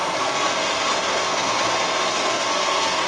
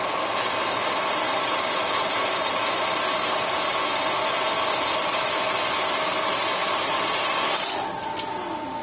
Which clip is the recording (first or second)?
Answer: second